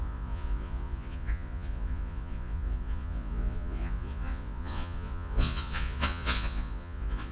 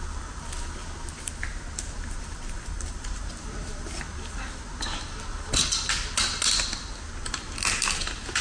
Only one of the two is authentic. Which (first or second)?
second